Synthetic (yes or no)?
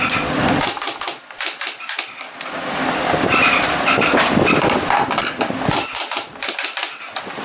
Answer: no